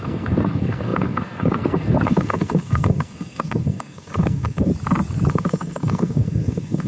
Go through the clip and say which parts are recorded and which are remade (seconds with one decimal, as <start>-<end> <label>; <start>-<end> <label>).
0.0-4.7 remade; 4.7-5.3 recorded; 5.3-6.9 remade